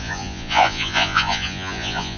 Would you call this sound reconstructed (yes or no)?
yes